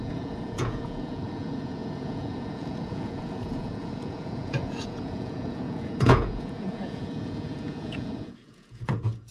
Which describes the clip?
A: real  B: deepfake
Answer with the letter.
B